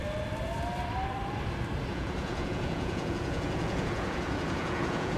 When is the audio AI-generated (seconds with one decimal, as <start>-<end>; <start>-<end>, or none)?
1.9-5.2